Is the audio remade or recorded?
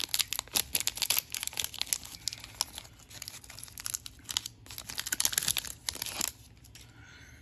recorded